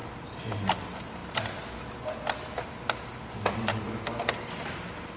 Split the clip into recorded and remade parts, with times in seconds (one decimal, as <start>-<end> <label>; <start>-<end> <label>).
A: 0.0-5.2 recorded